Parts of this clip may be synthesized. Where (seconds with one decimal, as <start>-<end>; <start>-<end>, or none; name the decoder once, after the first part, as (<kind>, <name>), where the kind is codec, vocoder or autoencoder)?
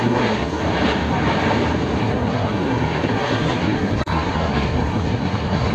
0.0-0.6 (codec, SNAC); 2.0-5.7